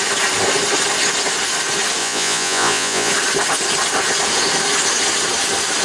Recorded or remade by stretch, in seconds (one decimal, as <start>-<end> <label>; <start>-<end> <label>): 0.0-2.0 recorded; 2.0-3.1 remade; 3.1-5.8 recorded